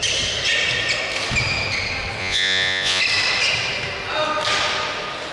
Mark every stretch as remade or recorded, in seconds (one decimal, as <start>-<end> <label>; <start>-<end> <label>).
0.0-2.2 recorded; 2.2-3.0 remade; 3.0-5.3 recorded